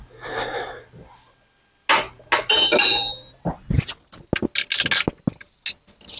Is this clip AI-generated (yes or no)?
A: no